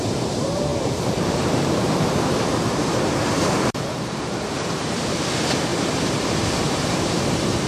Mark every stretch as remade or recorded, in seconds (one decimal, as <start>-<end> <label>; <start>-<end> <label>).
0.0-5.7 remade; 5.7-6.4 recorded; 6.4-7.7 remade